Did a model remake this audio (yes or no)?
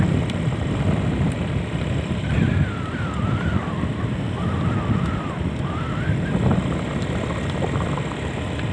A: no